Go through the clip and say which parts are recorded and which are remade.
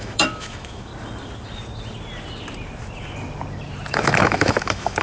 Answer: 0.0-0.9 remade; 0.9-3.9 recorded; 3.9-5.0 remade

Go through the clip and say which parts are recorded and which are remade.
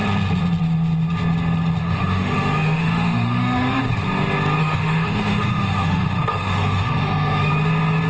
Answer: 0.0-1.8 recorded; 1.8-3.8 remade; 3.8-4.6 recorded; 4.6-7.5 remade; 7.5-8.1 recorded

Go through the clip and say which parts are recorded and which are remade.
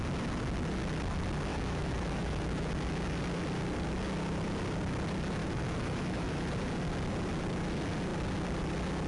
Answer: 0.0-1.5 recorded; 1.5-2.7 remade; 2.7-5.4 recorded; 5.4-6.5 remade; 6.5-9.1 recorded